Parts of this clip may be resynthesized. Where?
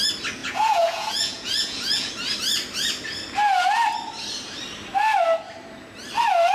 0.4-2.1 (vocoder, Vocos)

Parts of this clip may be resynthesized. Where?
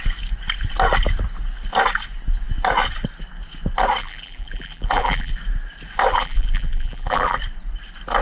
4.0-5.3 (vocoder, BigVGAN v2); 6.1-7.4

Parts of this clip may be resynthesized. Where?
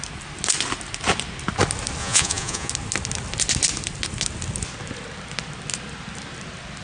2.0-2.7 (vocoder, Vocos)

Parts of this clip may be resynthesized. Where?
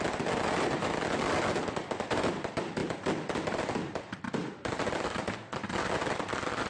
0.0-1.6 (vocoder, BigVGAN v2); 2.3-6.7